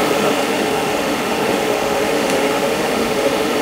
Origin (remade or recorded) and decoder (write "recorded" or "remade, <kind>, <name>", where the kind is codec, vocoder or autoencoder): remade, autoencoder, DAC-VAE